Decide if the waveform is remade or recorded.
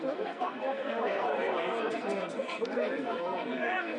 remade